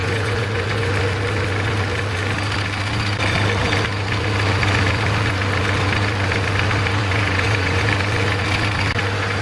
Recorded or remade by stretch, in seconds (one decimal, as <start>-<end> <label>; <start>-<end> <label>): 0.0-0.9 remade; 0.9-7.0 recorded; 7.0-7.8 remade; 7.8-9.4 recorded